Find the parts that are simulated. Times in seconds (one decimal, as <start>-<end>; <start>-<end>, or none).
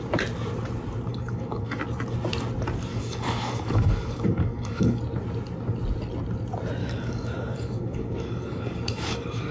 1.1-1.8; 2.9-5.0; 6.8-9.5